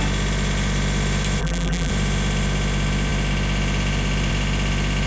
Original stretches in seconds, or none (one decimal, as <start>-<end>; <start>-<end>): 0.0-1.4; 1.9-5.1